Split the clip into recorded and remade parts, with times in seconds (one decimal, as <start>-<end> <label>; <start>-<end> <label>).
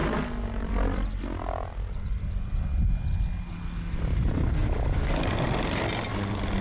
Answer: 0.0-6.6 recorded